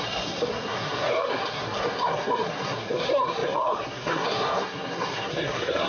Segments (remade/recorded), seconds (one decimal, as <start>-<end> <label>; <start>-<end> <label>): 0.0-5.9 remade